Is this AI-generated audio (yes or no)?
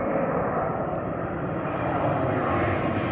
no